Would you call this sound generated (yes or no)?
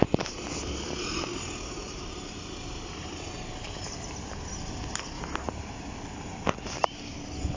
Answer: no